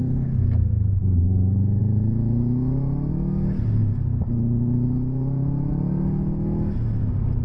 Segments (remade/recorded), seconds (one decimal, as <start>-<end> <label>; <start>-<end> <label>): 0.0-7.4 recorded